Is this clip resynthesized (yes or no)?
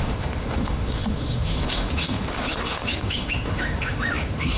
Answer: yes